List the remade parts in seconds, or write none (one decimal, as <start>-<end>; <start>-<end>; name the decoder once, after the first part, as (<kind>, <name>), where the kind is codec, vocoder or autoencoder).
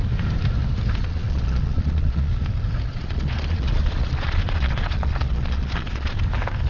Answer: 1.0-2.3 (vocoder, Vocos); 2.9-6.2